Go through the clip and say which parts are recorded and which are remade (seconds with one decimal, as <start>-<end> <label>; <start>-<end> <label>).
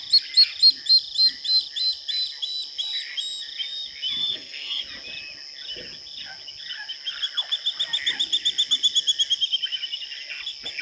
0.0-4.2 recorded; 4.2-4.8 remade; 4.8-10.8 recorded